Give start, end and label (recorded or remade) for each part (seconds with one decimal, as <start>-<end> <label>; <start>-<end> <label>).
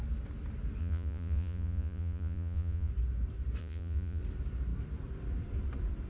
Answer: 0.0-0.8 recorded; 0.8-2.9 remade; 2.9-3.6 recorded; 3.6-4.2 remade; 4.2-6.1 recorded